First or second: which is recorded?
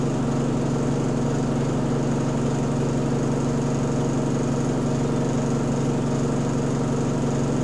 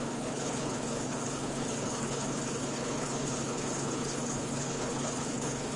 first